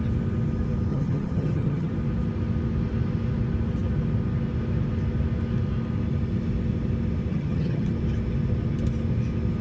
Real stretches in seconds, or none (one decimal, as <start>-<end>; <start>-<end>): 0.0-0.9; 1.9-7.3; 7.9-9.6